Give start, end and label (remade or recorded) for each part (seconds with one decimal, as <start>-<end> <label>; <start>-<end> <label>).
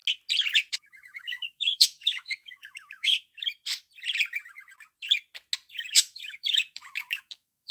0.0-0.7 recorded; 0.7-3.3 remade; 3.3-5.7 recorded; 5.7-7.7 remade